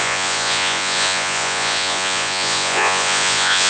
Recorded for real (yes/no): no